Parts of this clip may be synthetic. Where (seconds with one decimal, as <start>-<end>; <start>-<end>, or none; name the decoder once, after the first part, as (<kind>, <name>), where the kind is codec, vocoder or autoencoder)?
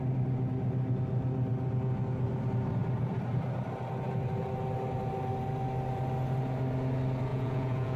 7.3-8.0 (vocoder, Vocos)